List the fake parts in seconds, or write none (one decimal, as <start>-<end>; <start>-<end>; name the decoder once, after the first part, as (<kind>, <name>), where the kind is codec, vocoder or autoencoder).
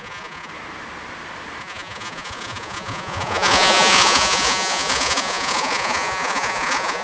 0.0-0.5 (vocoder, Vocos); 1.6-7.0